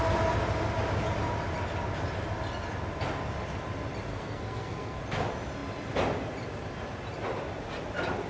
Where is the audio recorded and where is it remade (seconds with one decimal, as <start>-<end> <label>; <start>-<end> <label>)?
0.0-4.1 recorded; 4.1-5.0 remade; 5.0-8.3 recorded